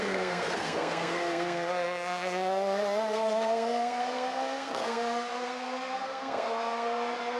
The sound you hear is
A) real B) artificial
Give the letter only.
B